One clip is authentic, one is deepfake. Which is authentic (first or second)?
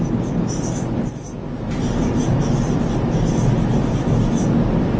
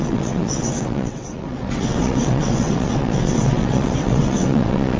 first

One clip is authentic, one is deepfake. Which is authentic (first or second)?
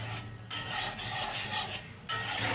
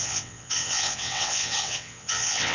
first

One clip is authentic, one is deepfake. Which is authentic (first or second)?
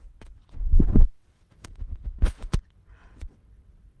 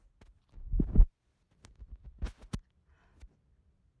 second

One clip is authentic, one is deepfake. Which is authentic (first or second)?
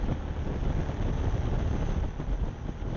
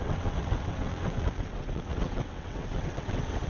first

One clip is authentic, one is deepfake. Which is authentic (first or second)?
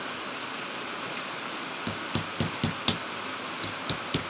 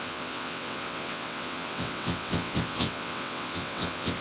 first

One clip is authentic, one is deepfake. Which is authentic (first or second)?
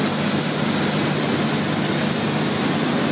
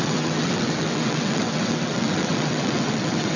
first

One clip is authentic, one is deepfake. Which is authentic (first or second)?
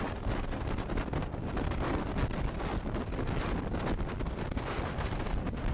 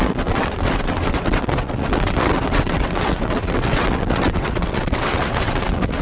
first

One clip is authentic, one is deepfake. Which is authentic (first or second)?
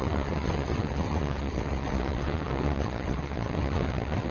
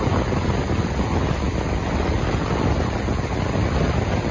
second